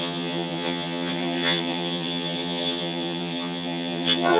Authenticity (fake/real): fake